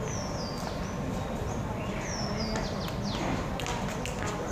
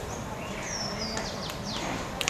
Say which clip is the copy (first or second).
second